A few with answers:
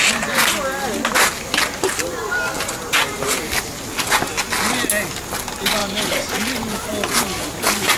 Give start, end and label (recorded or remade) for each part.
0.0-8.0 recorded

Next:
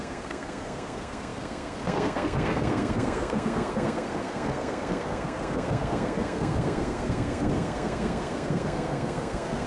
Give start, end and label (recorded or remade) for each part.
0.0-9.7 remade

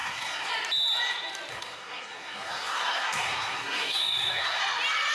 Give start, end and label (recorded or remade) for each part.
0.0-0.5 remade; 0.5-1.5 recorded; 1.5-4.6 remade; 4.6-5.1 recorded

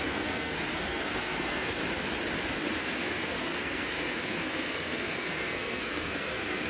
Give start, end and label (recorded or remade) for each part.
0.0-1.8 remade; 1.8-2.8 recorded; 2.8-6.7 remade